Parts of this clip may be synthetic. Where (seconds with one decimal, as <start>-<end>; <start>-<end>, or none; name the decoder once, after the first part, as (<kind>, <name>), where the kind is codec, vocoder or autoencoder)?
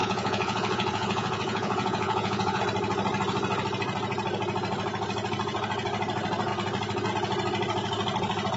0.0-2.6 (vocoder, Vocos)